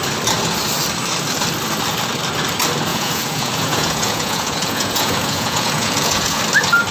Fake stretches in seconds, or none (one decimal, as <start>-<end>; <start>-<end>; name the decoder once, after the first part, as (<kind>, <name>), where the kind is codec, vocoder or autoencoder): 2.9-6.4 (vocoder, Vocos)